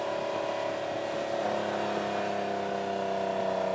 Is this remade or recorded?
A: recorded